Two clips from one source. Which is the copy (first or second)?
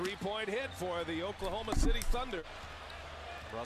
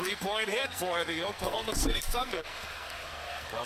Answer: second